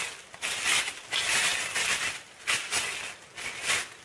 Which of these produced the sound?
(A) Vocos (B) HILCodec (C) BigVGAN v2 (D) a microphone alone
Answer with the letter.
D